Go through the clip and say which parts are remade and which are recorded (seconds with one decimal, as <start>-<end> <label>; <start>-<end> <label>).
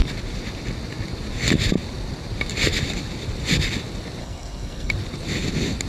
0.0-4.2 recorded; 4.2-4.9 remade; 4.9-5.9 recorded